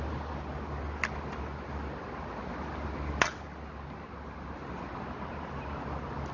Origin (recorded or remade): recorded